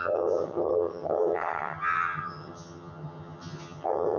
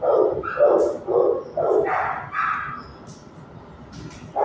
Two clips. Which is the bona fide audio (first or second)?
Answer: second